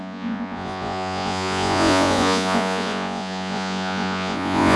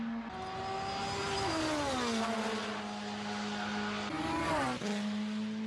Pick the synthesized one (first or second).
first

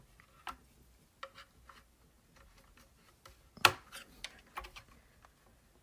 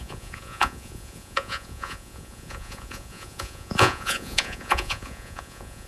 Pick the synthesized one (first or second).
second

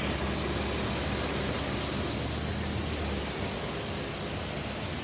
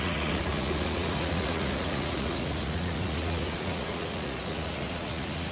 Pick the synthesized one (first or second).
second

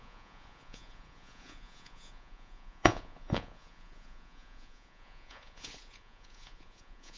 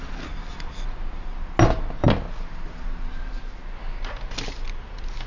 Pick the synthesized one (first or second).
first